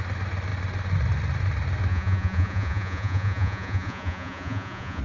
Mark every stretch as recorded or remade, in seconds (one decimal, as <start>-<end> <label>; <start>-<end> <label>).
0.0-1.9 recorded; 1.9-5.0 remade